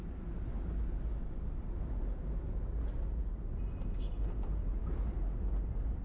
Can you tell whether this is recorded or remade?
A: recorded